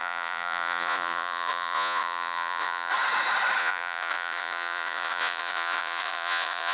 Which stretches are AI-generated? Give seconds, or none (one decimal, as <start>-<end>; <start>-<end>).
0.0-2.9; 3.6-6.7